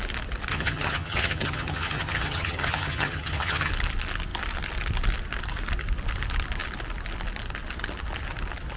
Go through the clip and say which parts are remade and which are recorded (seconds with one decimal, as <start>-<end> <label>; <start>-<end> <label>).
0.0-0.5 recorded; 0.5-3.7 remade; 3.7-8.8 recorded

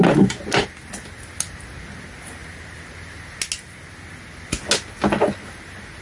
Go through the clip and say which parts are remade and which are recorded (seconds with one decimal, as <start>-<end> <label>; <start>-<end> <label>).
0.0-6.0 recorded

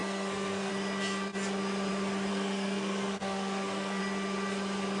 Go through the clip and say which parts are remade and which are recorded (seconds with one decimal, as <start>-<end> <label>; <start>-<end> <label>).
0.0-0.7 remade; 0.7-2.3 recorded; 2.3-4.0 remade; 4.0-5.0 recorded

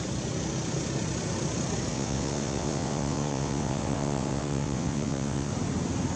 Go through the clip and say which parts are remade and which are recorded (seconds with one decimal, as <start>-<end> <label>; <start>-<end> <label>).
0.0-1.9 recorded; 1.9-5.5 remade; 5.5-6.2 recorded

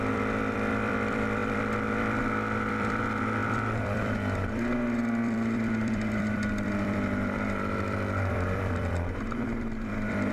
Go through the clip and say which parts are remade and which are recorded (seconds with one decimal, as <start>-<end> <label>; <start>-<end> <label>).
0.0-10.3 remade

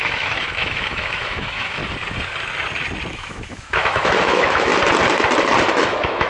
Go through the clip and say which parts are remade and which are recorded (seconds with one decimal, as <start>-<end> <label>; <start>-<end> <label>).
0.0-1.8 remade; 1.8-3.1 recorded; 3.1-4.7 remade; 4.7-5.7 recorded; 5.7-6.3 remade

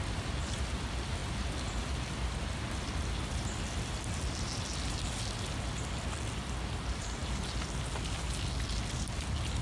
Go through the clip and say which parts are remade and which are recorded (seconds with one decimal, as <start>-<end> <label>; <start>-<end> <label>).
0.0-9.6 recorded